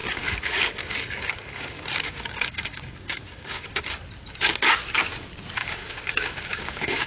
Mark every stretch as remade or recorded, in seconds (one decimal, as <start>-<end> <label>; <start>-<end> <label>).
0.0-3.8 remade; 3.8-5.6 recorded; 5.6-7.1 remade